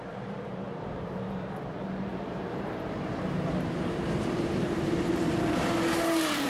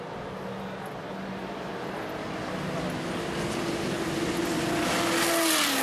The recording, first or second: second